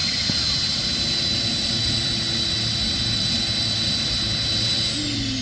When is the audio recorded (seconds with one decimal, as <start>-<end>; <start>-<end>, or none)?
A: 0.0-5.4